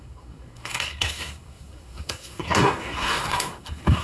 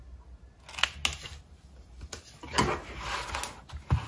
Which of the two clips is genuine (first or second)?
second